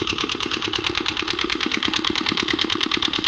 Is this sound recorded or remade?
remade